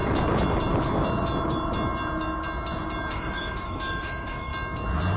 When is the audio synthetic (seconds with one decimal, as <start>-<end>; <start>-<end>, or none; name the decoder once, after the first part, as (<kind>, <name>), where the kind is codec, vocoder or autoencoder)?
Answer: 3.1-4.5 (autoencoder, DAC-VAE)